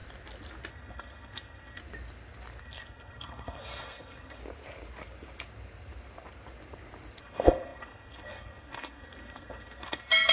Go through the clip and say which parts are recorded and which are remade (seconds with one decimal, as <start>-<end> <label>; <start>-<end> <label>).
0.0-0.7 recorded; 0.7-1.8 remade; 1.8-2.6 recorded; 2.6-4.4 remade; 4.4-7.2 recorded; 7.2-10.3 remade